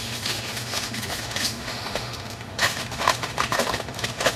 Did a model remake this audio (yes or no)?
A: yes